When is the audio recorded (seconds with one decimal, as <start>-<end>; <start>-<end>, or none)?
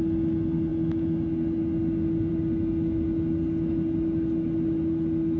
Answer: 0.0-5.4